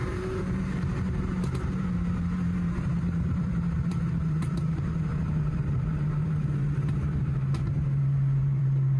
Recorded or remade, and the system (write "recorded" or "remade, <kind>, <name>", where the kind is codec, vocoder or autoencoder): remade, vocoder, BigVGAN v2